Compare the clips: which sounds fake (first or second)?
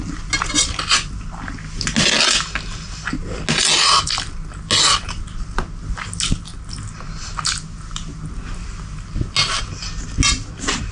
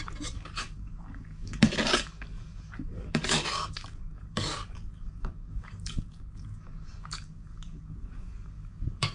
second